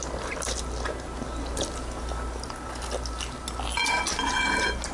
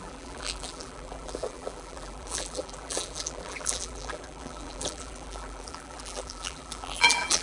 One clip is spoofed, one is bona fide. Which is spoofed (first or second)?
second